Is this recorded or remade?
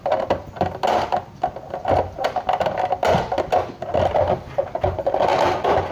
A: recorded